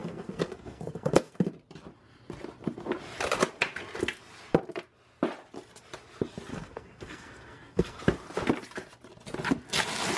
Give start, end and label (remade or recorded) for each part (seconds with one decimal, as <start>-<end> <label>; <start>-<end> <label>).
0.0-1.5 remade; 1.5-6.5 recorded; 6.5-8.0 remade; 8.0-10.2 recorded